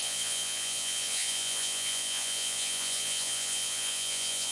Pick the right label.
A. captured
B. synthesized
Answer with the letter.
B